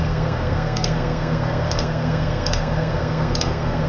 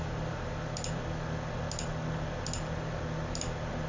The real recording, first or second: second